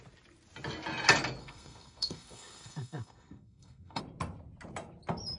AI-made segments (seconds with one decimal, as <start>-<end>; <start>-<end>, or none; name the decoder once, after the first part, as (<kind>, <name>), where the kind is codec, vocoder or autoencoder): 1.4-4.0 (codec, SNAC)